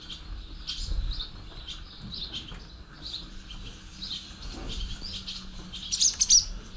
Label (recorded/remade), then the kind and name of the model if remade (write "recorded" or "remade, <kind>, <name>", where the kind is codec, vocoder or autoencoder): recorded